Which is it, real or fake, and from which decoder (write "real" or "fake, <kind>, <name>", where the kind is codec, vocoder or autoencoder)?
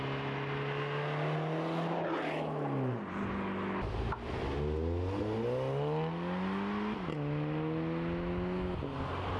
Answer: real